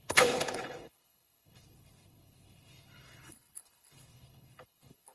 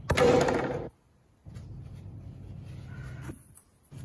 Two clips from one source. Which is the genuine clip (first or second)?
second